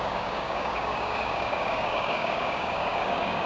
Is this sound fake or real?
fake